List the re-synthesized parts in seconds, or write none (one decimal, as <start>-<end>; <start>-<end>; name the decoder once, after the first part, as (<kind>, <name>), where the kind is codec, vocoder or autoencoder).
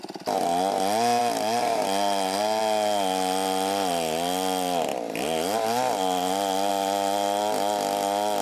1.2-2.6 (vocoder, BigVGAN v2); 4.9-6.7